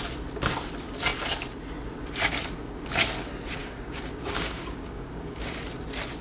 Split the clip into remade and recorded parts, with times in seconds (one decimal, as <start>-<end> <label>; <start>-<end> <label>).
0.0-3.6 recorded; 3.6-5.5 remade; 5.5-6.2 recorded